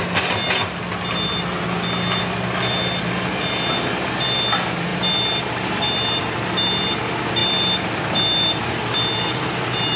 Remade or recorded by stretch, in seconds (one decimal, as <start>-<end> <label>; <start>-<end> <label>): 0.0-10.0 recorded